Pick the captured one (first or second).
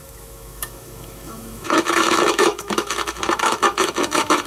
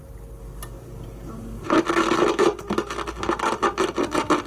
second